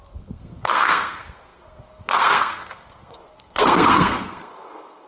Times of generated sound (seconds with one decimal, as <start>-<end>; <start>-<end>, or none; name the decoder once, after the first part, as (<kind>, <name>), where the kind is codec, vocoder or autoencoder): 0.0-5.1 (codec, SNAC)